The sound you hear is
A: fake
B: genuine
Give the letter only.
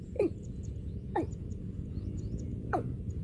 A